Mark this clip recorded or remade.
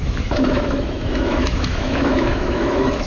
remade